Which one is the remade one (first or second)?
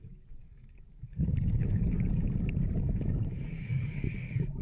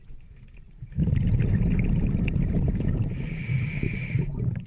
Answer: first